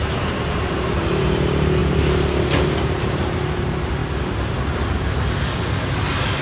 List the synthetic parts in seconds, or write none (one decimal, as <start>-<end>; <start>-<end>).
0.0-4.0